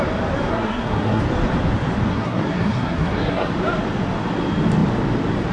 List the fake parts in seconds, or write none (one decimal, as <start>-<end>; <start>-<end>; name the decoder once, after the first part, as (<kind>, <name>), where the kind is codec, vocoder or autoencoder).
0.5-1.2 (codec, SNAC); 2.1-3.5